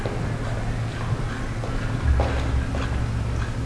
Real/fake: real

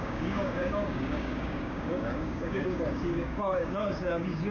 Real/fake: fake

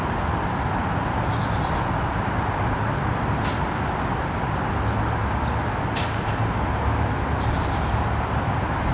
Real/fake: real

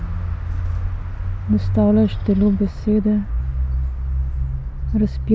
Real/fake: real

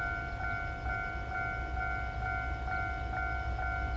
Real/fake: real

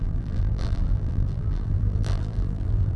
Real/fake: fake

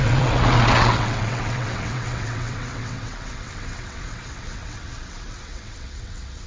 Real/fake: fake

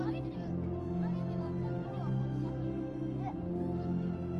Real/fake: real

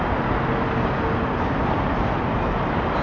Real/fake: real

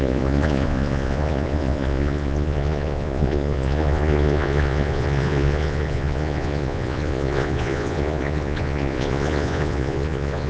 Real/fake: fake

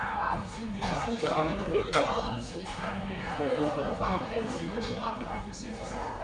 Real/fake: fake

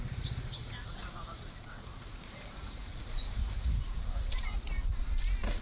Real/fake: fake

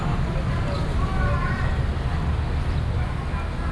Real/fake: real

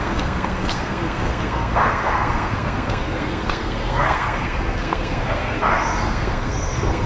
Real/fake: fake